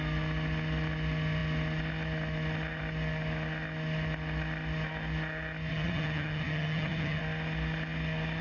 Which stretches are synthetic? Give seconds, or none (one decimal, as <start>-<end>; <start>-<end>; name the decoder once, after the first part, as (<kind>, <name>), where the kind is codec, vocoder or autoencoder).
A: 5.7-7.2 (vocoder, HiFi-GAN)